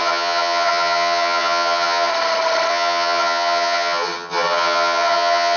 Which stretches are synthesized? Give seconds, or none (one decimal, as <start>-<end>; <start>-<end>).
0.0-2.1; 2.7-5.6